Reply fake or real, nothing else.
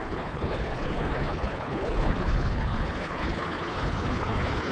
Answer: fake